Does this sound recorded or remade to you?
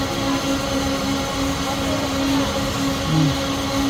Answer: recorded